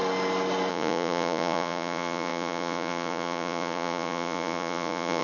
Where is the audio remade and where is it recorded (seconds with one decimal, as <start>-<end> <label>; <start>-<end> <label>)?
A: 0.0-0.7 recorded; 0.7-5.2 remade